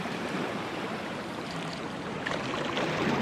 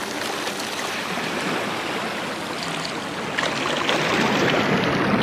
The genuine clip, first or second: second